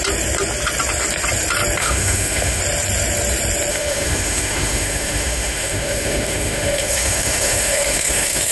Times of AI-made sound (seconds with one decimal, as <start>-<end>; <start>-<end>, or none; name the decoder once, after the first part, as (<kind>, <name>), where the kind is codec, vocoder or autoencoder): 1.8-2.6 (autoencoder, DAC-VAE); 3.7-8.5

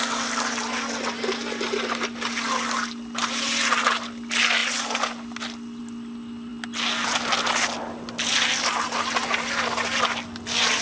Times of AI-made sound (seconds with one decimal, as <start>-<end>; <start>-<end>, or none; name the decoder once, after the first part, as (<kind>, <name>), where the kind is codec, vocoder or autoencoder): none